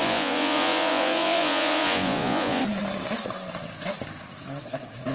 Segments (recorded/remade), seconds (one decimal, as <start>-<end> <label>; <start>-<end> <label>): 0.0-2.6 remade; 2.6-5.1 recorded